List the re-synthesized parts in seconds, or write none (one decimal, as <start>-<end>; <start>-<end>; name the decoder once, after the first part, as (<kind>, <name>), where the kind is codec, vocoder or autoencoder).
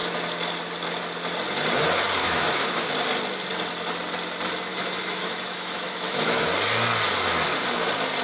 2.2-2.9 (autoencoder, DAC-VAE); 4.7-6.5